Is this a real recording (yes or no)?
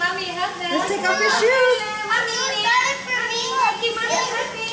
yes